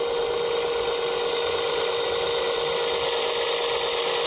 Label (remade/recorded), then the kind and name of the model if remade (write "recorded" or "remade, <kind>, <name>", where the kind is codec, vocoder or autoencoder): recorded